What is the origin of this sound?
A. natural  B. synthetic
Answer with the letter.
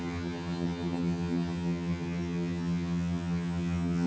B